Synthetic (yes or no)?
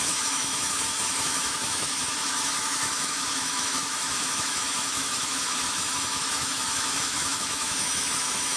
yes